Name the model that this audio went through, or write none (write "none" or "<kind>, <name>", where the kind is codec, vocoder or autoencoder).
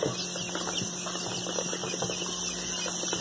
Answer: none